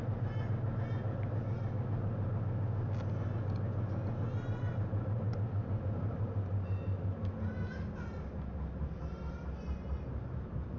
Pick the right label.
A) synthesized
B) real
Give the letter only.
B